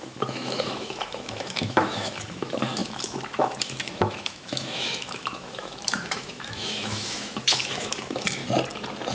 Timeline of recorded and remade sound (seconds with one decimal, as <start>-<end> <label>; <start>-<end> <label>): 0.0-8.4 remade; 8.4-9.1 recorded